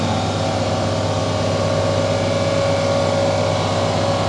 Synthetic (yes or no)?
no